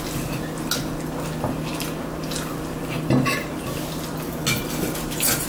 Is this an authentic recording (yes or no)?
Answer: yes